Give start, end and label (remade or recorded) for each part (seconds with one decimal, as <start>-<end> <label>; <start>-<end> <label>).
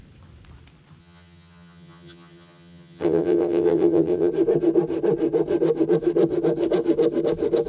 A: 0.0-1.0 recorded; 1.0-4.3 remade; 4.3-7.7 recorded